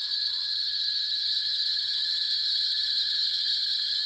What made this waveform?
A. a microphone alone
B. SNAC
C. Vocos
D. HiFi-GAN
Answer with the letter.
D